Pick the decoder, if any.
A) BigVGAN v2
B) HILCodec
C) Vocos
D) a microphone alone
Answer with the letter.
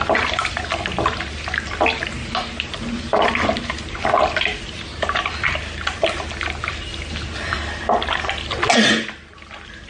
D